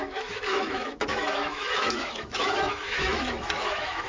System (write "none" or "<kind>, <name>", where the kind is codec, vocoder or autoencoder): autoencoder, DAC-VAE